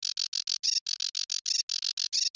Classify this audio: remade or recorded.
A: recorded